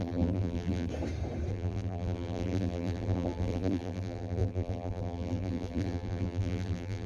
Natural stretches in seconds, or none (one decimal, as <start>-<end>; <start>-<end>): 0.9-1.5